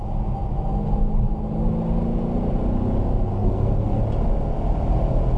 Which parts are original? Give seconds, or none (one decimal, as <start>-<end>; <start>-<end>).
0.0-3.3; 4.0-5.4